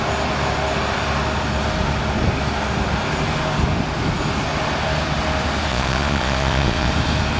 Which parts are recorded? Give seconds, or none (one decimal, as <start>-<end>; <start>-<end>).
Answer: 0.0-5.7; 6.9-7.4

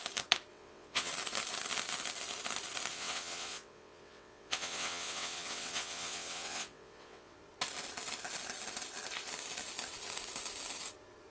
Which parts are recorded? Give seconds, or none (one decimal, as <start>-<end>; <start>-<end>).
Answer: 0.0-0.5; 1.1-2.9; 7.3-11.3